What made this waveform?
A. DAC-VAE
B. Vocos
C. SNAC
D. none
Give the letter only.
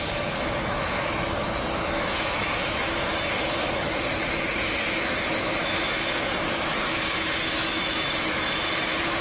A